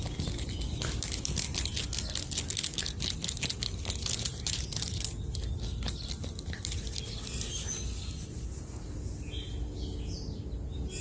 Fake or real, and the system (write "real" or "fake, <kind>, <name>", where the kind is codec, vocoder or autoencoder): real